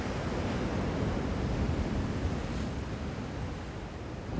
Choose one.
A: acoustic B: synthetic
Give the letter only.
A